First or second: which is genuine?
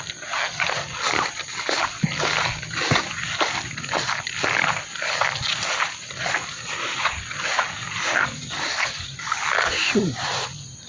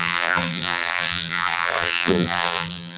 first